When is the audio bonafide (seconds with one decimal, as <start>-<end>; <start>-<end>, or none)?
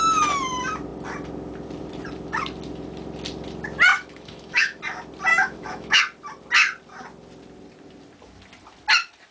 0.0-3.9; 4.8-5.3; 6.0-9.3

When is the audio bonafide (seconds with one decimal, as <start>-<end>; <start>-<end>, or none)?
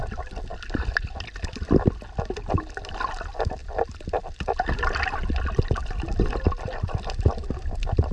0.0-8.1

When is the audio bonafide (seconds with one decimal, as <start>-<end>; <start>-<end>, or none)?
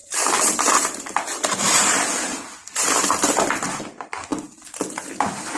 1.8-5.6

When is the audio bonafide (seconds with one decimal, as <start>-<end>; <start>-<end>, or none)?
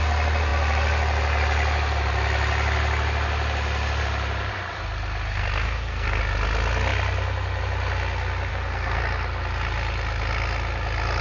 0.0-5.3; 6.2-8.5; 9.0-11.2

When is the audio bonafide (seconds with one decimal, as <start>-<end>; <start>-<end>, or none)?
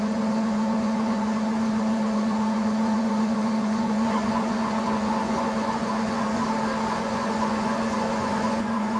6.4-6.9